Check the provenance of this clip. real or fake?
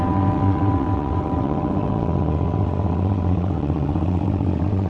fake